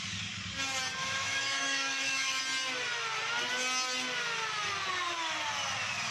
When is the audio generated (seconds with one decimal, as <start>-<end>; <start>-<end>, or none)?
1.0-2.4